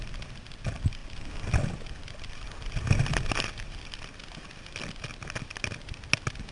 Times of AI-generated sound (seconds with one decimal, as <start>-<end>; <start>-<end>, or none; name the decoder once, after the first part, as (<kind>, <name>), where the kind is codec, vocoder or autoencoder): none